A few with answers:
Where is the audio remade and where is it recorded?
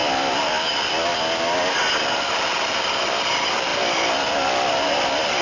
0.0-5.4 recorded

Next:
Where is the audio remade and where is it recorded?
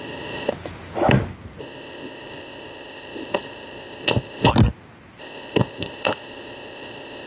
0.0-0.5 remade; 0.5-1.6 recorded; 1.6-4.5 remade; 4.5-5.2 recorded; 5.2-7.3 remade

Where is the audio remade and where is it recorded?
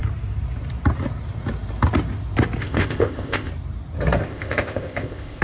0.0-2.6 recorded; 2.6-3.5 remade; 3.5-4.2 recorded; 4.2-5.4 remade